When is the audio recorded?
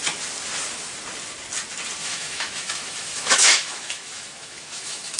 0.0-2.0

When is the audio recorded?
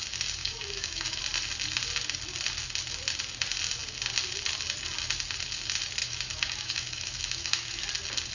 0.0-0.4; 1.2-6.0; 7.8-8.3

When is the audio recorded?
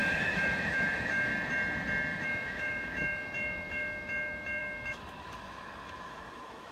1.3-2.2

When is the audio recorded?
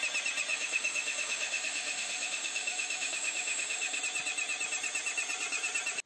0.0-0.5; 4.0-6.1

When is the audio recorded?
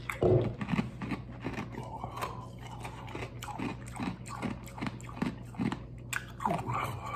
0.0-7.2